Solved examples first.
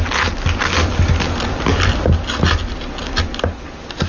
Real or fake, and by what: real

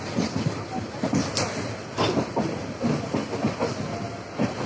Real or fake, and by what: real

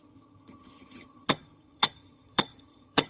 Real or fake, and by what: fake, vocoder, HiFi-GAN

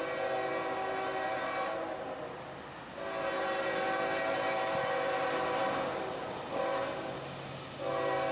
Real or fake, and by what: real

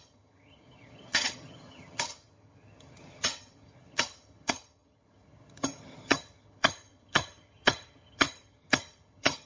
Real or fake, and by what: fake, vocoder, HiFi-GAN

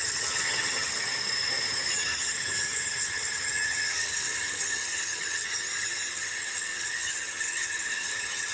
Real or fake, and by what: fake, vocoder, HiFi-GAN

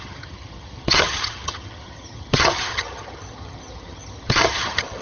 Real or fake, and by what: fake, vocoder, HiFi-GAN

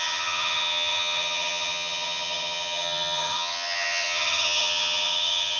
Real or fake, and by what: fake, vocoder, HiFi-GAN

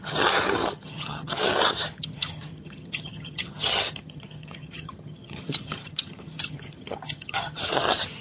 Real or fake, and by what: fake, vocoder, HiFi-GAN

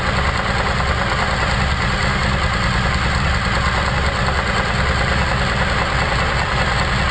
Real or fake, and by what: real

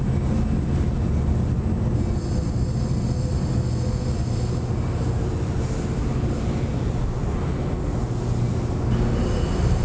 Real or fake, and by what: real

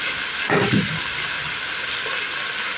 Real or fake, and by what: real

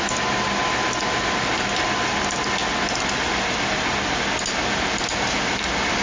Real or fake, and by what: real